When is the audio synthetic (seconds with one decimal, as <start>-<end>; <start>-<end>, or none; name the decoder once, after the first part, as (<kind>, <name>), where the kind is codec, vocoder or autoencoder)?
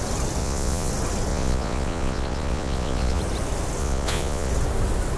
0.4-0.9 (vocoder, Vocos); 1.3-3.2; 3.8-4.5